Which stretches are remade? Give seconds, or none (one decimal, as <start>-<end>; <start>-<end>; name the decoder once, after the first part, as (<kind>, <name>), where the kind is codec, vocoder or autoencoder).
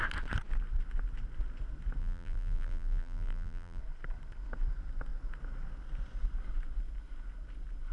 2.0-3.8 (vocoder, BigVGAN v2)